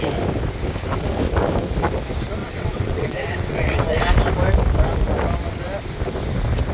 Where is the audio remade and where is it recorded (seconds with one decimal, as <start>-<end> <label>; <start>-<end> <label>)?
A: 0.0-2.4 recorded; 2.4-4.0 remade; 4.0-6.7 recorded